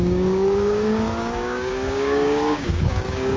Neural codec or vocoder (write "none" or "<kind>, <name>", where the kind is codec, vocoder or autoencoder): codec, DAC